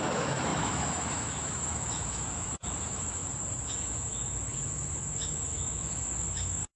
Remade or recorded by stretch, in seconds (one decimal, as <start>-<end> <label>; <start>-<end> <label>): 0.0-3.2 remade; 3.2-3.7 recorded; 3.7-6.8 remade